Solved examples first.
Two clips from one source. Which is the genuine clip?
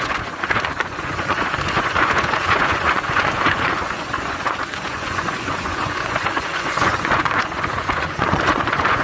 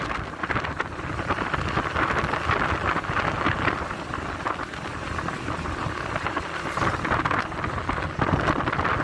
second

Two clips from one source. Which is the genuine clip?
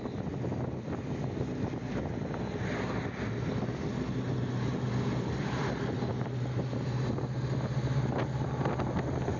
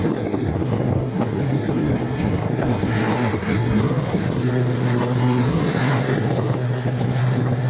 first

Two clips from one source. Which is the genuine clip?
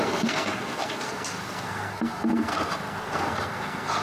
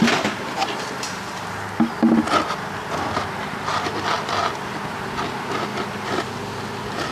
second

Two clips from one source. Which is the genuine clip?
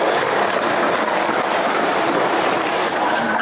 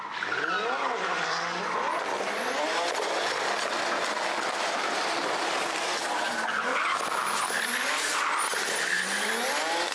second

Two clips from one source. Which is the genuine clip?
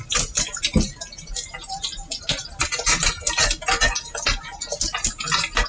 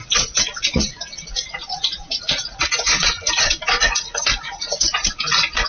first